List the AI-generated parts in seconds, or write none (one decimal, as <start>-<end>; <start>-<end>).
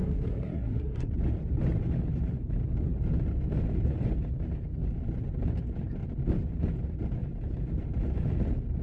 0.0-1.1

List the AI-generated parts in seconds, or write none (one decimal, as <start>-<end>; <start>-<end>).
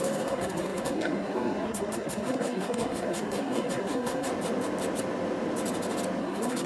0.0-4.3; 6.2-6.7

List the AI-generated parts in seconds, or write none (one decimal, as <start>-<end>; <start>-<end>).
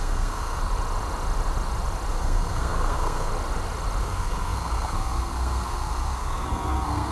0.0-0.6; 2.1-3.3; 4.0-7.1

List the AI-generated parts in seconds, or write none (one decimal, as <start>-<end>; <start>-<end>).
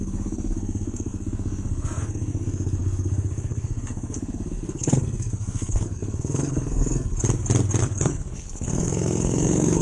0.0-7.1; 7.8-9.8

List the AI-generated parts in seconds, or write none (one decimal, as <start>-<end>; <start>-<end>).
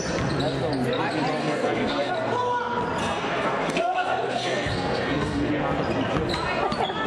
1.4-2.1; 3.0-5.5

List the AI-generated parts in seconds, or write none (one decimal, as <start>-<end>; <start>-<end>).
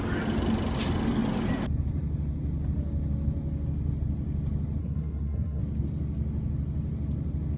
4.8-5.6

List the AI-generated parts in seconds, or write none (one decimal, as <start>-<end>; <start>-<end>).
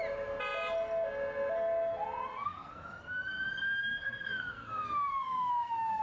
2.3-6.0